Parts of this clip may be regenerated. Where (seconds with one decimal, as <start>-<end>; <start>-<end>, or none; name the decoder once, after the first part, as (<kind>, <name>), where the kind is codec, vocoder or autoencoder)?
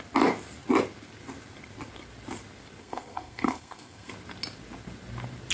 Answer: 2.8-4.1 (codec, SNAC)